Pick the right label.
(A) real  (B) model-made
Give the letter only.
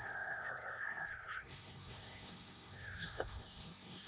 B